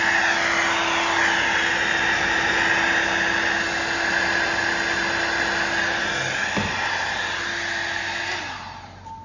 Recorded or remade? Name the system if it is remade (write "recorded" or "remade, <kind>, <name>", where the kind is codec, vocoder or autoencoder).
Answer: recorded